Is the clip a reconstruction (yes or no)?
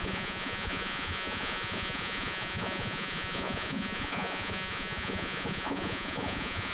yes